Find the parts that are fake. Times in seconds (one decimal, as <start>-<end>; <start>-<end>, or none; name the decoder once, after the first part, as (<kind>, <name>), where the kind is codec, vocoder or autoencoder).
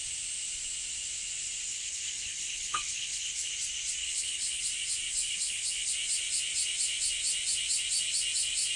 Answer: 1.7-3.5 (codec, HILCodec); 4.0-4.6; 5.1-5.9